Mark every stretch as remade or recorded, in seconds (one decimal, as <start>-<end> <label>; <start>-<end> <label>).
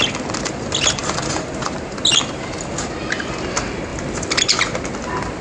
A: 0.0-5.4 recorded